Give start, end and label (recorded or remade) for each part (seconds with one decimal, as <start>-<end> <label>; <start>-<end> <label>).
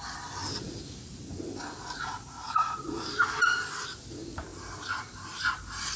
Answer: 0.0-0.4 recorded; 0.4-4.0 remade; 4.0-4.5 recorded; 4.5-5.6 remade; 5.6-6.0 recorded